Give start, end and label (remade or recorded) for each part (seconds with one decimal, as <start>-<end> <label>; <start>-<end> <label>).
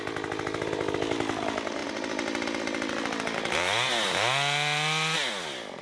0.0-5.8 recorded